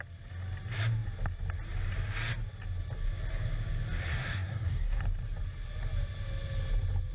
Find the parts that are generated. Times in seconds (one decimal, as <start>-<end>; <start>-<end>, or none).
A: 4.1-5.0